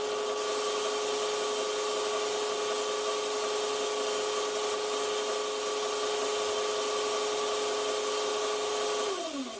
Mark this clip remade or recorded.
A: recorded